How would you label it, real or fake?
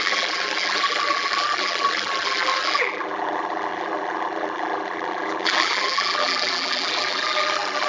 fake